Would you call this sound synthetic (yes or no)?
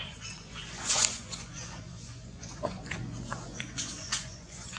yes